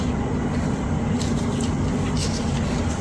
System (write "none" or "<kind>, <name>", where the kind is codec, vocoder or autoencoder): none